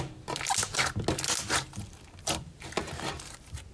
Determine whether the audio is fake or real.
real